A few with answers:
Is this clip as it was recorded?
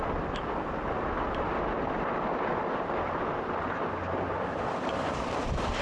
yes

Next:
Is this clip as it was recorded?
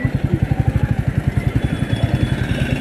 yes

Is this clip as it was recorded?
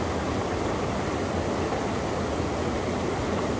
yes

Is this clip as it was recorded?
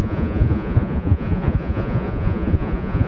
no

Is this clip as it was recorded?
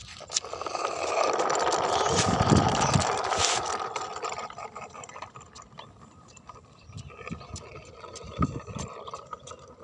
yes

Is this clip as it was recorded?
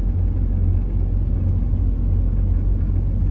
yes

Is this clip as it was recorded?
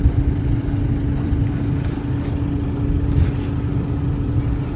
yes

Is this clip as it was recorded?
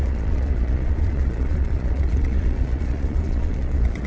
no